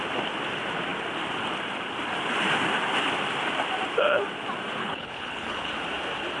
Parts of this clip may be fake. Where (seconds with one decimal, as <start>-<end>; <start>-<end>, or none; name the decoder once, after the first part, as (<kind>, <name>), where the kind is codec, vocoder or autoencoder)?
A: 4.8-5.7 (codec, HILCodec)